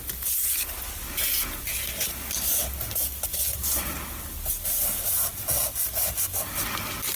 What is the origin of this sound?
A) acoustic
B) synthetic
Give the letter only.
A